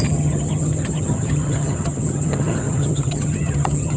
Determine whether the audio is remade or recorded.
remade